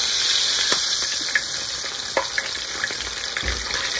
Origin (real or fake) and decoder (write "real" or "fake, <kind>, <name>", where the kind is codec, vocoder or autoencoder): real